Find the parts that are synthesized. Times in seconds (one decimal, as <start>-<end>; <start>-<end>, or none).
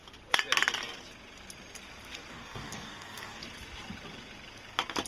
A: 2.3-3.4